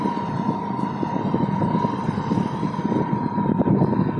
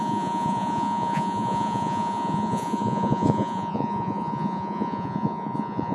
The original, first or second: first